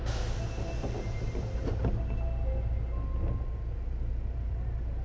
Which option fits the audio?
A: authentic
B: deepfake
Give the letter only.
A